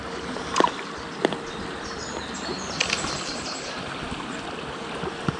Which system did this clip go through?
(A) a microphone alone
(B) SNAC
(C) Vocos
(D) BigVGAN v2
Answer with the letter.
D